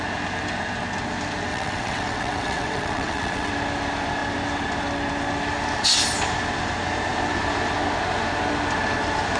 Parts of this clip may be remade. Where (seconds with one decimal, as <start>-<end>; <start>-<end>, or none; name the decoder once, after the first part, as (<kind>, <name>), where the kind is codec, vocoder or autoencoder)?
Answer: 1.5-3.5 (vocoder, WaveNeXt)